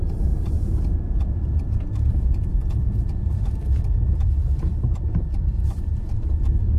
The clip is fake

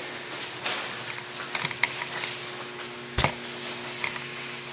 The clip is real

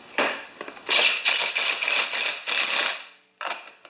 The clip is fake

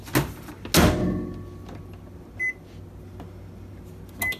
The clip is real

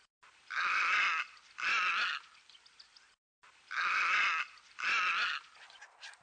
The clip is real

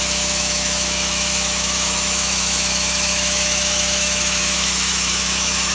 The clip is fake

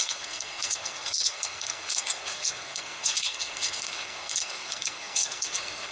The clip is fake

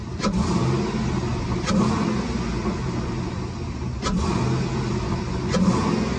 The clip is real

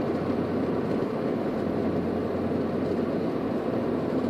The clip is real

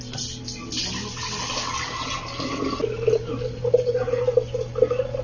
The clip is real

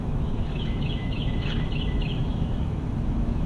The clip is fake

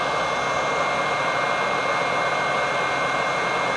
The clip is real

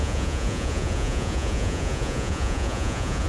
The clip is fake